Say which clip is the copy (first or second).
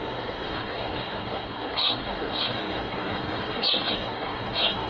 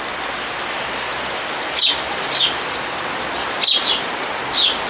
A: first